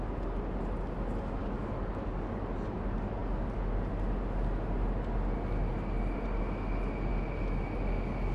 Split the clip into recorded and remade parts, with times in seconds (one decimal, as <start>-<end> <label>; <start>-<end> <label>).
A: 0.0-1.4 recorded; 1.4-2.4 remade; 2.4-8.3 recorded